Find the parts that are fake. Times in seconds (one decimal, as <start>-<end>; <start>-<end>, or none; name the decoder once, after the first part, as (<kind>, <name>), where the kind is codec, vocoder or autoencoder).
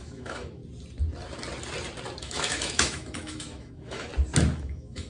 0.0-0.6 (autoencoder, DAC-VAE); 2.2-4.1; 4.6-5.1